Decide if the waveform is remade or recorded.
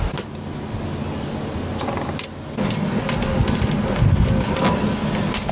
recorded